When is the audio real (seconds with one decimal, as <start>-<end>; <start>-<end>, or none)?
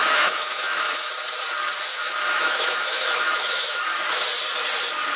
1.1-1.9; 3.8-5.2